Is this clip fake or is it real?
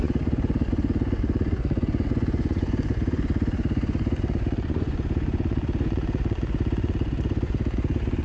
fake